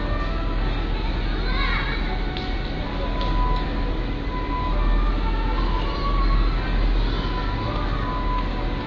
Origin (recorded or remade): recorded